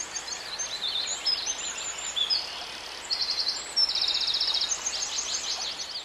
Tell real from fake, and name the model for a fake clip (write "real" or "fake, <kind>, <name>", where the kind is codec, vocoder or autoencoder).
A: real